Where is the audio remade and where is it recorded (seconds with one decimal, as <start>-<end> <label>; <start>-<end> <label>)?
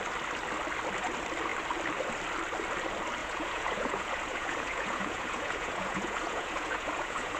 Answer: 0.0-3.2 recorded; 3.2-7.4 remade